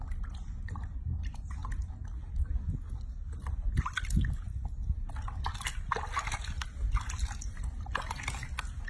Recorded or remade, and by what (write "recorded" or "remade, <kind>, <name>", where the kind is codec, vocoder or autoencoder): recorded